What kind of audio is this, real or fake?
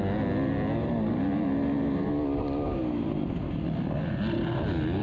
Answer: real